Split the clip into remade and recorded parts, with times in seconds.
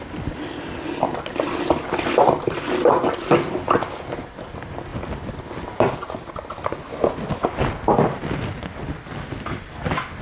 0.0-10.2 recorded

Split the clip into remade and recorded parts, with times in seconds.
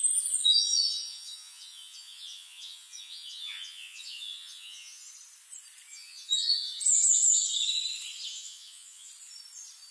0.0-0.4 recorded; 0.4-5.1 remade; 5.1-5.9 recorded; 5.9-6.8 remade; 6.8-8.3 recorded; 8.3-9.1 remade; 9.1-9.9 recorded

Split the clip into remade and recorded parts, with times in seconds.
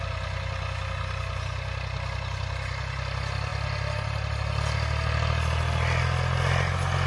0.0-7.1 recorded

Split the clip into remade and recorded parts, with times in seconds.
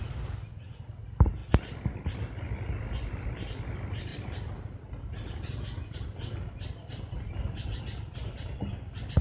0.0-9.2 recorded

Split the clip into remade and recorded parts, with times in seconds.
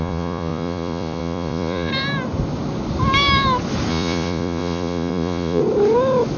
0.0-1.9 remade; 1.9-3.9 recorded; 3.9-5.6 remade; 5.6-6.4 recorded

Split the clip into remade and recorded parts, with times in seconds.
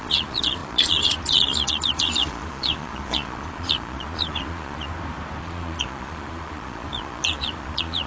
0.0-4.9 remade; 4.9-5.4 recorded; 5.4-8.1 remade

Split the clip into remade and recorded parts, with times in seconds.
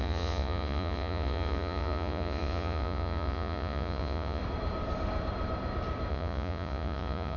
0.0-4.4 remade; 4.4-6.1 recorded; 6.1-7.4 remade